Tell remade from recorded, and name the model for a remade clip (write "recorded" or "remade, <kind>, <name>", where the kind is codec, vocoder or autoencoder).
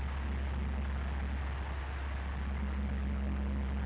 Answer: recorded